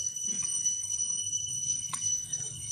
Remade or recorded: remade